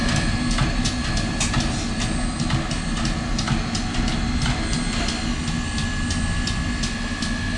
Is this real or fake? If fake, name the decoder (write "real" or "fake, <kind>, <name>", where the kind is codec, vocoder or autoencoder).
real